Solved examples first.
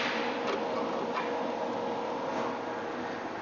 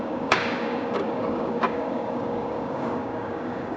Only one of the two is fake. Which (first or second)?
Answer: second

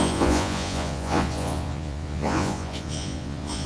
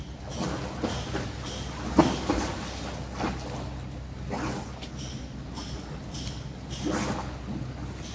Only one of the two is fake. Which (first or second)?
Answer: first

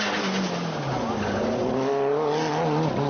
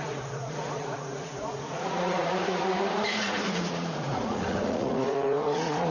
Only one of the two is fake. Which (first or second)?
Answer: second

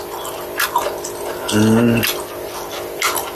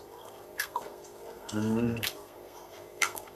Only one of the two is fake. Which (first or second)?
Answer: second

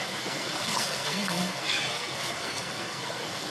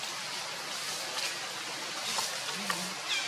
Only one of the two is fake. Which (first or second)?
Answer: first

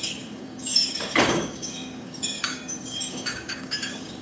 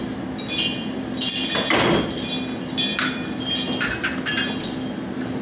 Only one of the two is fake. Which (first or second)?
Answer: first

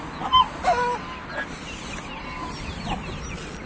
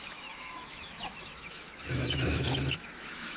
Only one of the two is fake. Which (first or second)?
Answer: second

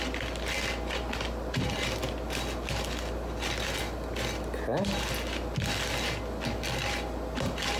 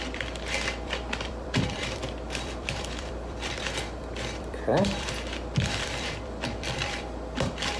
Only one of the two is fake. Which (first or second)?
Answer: second